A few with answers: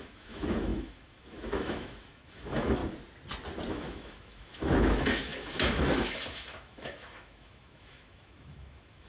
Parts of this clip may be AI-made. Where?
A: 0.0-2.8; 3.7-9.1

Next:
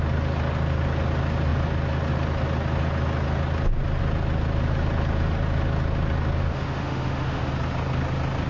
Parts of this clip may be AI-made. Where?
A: 6.4-7.5

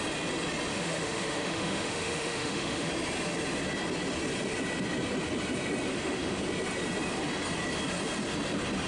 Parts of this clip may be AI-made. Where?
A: 0.7-2.9; 5.9-6.4

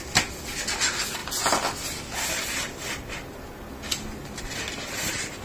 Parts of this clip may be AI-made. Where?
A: none

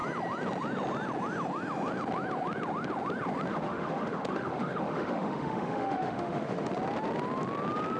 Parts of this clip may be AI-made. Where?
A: 3.5-6.7